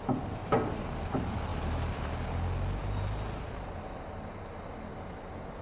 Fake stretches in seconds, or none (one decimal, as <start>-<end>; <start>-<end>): none